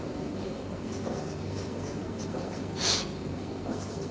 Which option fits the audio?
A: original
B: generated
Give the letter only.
B